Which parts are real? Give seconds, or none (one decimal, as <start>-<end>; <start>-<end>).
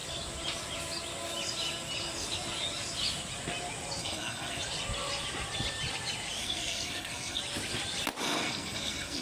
0.0-4.0; 4.6-6.4; 7.4-8.2